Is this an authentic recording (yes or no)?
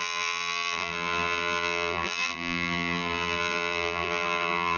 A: no